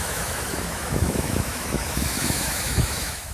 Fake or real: fake